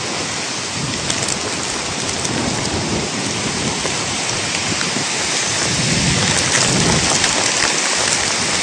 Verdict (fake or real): real